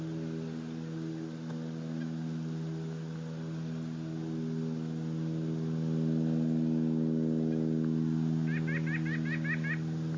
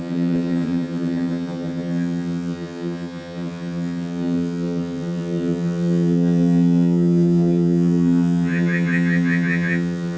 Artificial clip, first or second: second